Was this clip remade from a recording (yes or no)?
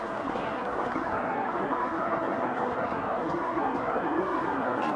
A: yes